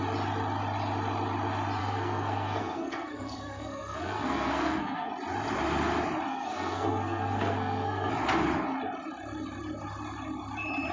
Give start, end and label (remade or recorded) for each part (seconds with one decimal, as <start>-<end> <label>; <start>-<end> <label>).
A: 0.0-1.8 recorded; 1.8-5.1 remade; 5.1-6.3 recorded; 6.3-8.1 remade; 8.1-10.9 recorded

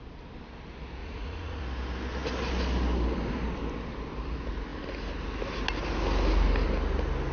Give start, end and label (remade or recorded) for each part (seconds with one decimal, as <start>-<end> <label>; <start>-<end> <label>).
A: 0.0-1.0 recorded; 1.0-1.6 remade; 1.6-7.3 recorded

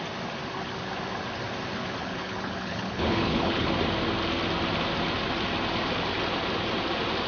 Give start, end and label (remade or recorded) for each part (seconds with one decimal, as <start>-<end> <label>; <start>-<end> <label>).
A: 0.0-2.0 recorded; 2.0-3.7 remade; 3.7-7.3 recorded

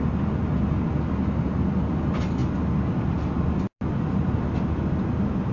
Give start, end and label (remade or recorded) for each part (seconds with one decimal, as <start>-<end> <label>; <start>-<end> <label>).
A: 0.0-5.5 recorded

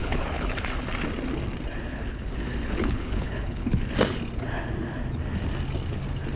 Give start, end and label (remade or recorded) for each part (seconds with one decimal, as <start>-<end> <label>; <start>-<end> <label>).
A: 0.0-0.5 remade; 0.5-1.9 recorded; 1.9-3.9 remade; 3.9-6.4 recorded